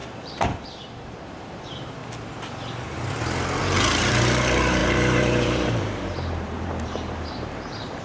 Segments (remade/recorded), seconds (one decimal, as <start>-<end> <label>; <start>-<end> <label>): 0.0-2.0 remade; 2.0-3.6 recorded; 3.6-8.0 remade